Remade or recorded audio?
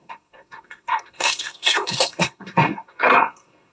remade